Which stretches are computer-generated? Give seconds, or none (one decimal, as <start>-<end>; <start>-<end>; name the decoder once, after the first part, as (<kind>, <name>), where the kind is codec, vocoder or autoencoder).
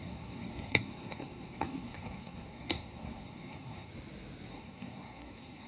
0.0-3.9 (codec, SNAC); 4.5-5.7